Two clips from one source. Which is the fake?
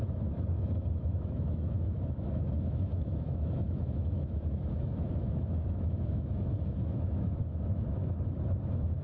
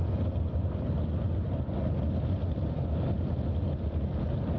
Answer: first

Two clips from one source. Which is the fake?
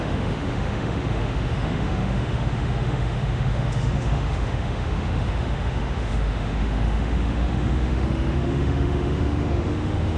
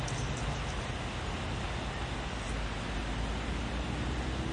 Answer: first